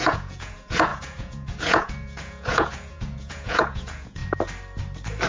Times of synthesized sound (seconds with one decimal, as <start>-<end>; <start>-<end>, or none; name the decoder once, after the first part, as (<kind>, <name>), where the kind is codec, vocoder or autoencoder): 0.0-4.2 (vocoder, Vocos)